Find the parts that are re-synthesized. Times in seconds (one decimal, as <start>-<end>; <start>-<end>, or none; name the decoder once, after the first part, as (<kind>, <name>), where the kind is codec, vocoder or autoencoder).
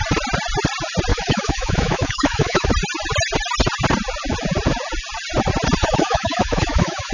1.1-2.7 (autoencoder, DAC-VAE); 5.8-7.1